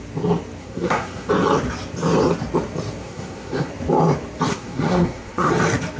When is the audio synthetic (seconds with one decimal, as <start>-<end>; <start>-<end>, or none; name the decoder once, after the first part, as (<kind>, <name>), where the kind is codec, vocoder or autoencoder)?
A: 0.6-1.3 (codec, SNAC); 3.0-3.7; 4.5-5.5